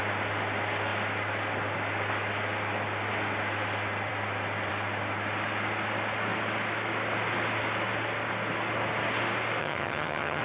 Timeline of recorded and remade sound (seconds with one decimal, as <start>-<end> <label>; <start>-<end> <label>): 0.0-9.6 recorded; 9.6-10.4 remade